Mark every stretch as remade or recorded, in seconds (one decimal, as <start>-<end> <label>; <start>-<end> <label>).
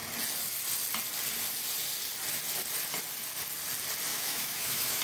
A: 0.0-4.1 recorded; 4.1-5.0 remade